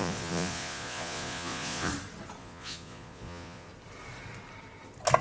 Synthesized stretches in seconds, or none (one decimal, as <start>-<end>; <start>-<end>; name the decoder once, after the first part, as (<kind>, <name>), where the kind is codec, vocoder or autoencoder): 0.0-1.9 (vocoder, Vocos); 2.4-3.7